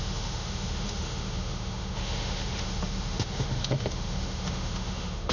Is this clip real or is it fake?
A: fake